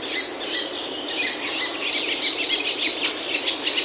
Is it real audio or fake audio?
real